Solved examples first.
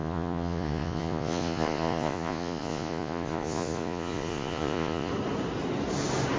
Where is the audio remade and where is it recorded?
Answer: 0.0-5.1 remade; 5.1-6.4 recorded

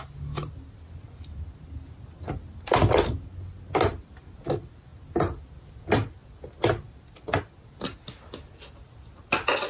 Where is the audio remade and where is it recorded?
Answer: 0.0-9.7 recorded

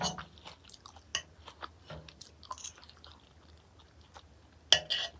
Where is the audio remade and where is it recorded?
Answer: 0.0-5.2 recorded